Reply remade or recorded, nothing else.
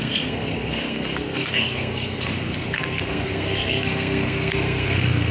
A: remade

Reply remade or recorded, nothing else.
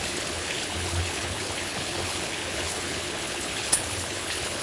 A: remade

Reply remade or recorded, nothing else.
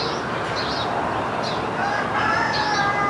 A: recorded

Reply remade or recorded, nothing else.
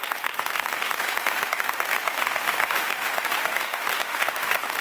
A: remade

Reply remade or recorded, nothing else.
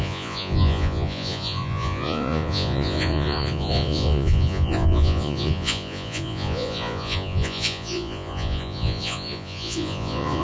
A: remade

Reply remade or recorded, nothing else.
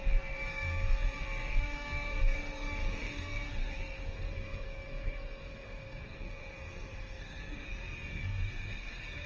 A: remade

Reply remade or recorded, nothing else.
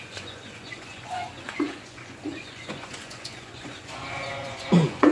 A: remade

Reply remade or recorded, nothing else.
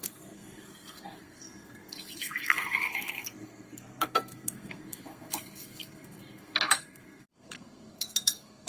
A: remade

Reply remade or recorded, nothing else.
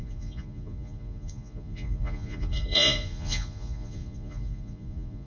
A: remade